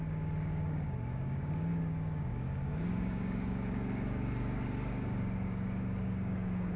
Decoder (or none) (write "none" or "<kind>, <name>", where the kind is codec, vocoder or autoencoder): codec, DAC